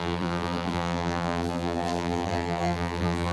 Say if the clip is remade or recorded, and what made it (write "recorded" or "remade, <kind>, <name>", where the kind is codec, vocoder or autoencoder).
remade, vocoder, BigVGAN v2